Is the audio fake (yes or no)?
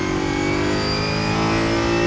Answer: no